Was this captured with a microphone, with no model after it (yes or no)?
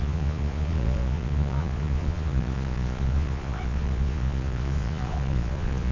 no